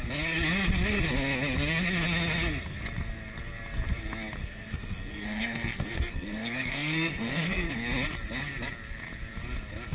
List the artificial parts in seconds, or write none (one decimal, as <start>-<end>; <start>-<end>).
4.4-7.7